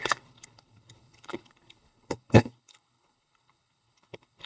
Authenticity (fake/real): fake